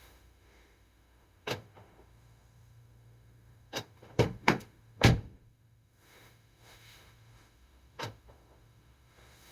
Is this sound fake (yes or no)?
yes